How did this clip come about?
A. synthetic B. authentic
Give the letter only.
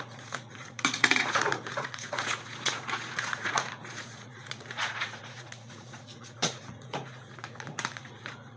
A